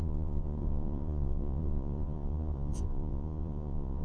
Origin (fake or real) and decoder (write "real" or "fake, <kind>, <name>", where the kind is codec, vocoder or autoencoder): fake, vocoder, Vocos